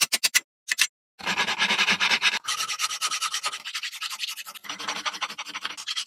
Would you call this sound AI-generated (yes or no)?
no